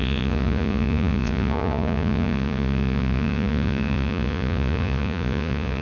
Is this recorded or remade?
remade